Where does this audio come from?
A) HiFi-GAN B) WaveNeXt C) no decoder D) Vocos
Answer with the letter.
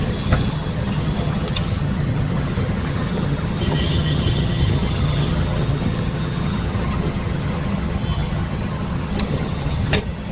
A